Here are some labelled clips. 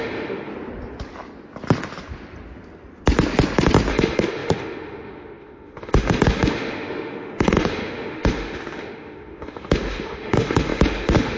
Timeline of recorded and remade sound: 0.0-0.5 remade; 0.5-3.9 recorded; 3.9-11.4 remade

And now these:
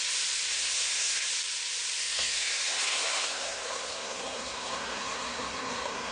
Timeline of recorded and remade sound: 0.0-0.5 recorded; 0.5-1.3 remade; 1.3-2.0 recorded; 2.0-6.1 remade

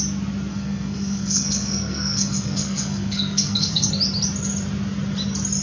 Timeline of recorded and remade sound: 0.0-0.5 recorded; 0.5-3.9 remade; 3.9-5.6 recorded

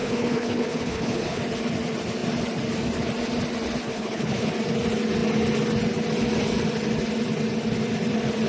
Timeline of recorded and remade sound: 0.0-1.4 remade; 1.4-3.9 recorded; 3.9-4.5 remade; 4.5-8.5 recorded

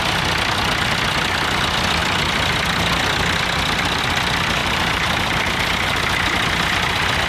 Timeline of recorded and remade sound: 0.0-4.6 recorded; 4.6-5.7 remade; 5.7-7.3 recorded

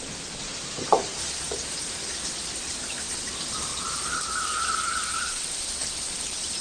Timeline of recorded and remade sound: 0.0-3.7 remade; 3.7-5.9 recorded; 5.9-6.6 remade

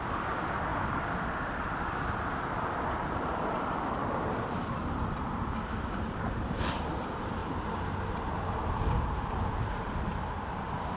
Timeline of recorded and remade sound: 0.0-0.7 remade; 0.7-2.3 recorded; 2.3-7.4 remade; 7.4-8.3 recorded; 8.3-11.0 remade

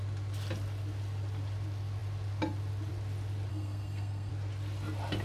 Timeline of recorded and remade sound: 0.0-3.5 recorded; 3.5-4.3 remade; 4.3-5.2 recorded